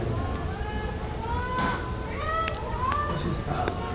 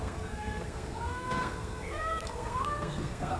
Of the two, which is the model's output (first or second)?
second